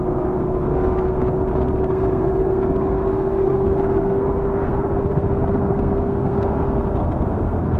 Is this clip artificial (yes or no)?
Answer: yes